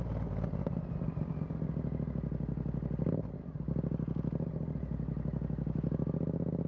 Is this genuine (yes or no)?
yes